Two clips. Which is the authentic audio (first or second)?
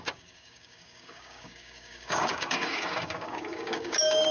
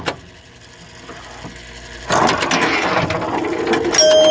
second